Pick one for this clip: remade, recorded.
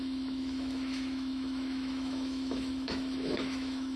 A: remade